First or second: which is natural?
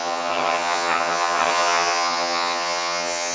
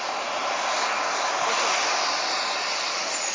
second